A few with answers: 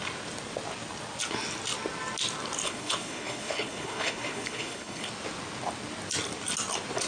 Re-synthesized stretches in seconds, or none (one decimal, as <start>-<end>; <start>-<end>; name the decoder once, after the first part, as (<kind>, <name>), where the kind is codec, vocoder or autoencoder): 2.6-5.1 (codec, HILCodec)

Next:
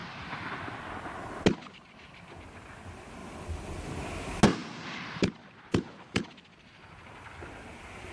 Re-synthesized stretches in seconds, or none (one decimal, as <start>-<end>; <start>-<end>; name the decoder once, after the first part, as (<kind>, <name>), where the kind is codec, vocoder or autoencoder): 0.0-0.9 (vocoder, BigVGAN v2); 3.2-3.9; 4.6-8.1

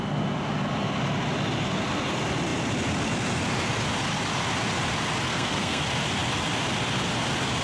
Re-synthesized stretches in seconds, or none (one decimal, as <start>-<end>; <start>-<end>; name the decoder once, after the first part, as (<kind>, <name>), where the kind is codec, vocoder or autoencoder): 5.3-5.8 (codec, SNAC)

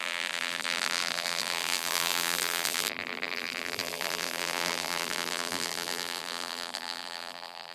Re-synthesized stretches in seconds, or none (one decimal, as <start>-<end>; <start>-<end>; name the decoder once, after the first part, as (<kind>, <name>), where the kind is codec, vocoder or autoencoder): 0.0-7.7 (vocoder, BigVGAN v2)